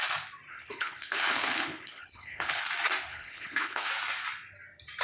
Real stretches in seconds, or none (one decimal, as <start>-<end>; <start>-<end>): 0.0-0.5; 2.6-3.1; 3.9-5.0